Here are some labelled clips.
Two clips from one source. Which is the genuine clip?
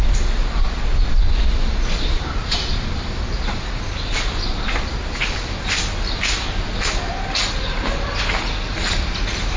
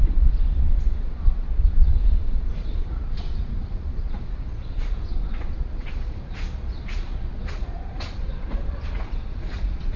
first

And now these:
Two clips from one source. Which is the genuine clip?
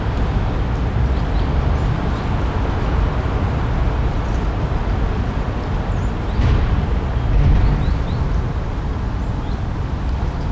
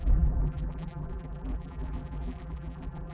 first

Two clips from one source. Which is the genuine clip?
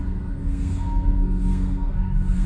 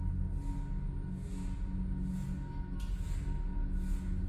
second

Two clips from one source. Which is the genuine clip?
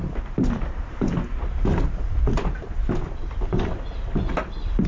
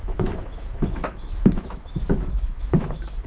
first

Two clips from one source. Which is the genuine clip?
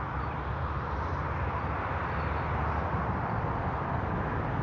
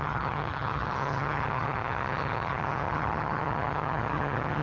first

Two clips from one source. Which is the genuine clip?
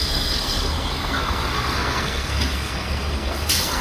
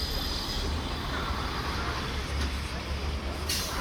second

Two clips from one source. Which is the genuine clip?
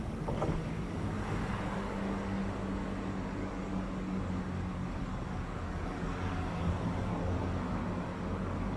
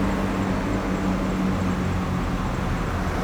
second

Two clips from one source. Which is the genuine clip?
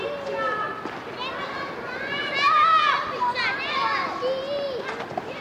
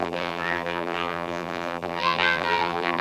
first